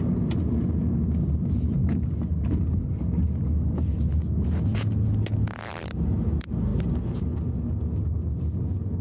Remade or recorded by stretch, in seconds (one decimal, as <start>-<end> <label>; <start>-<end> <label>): 0.0-9.0 recorded